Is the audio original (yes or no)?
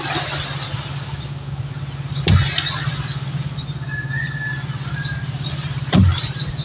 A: yes